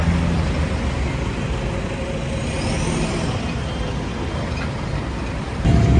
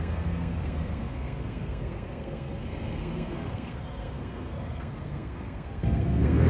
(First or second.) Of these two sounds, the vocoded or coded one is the second